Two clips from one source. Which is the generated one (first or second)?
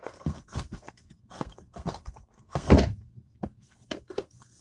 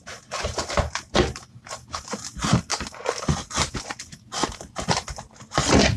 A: first